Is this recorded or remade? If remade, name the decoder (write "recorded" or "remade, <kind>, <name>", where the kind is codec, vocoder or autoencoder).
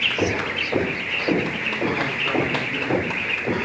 recorded